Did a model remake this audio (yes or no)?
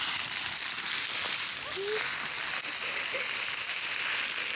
no